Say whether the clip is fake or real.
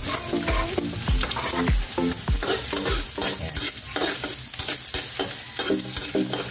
real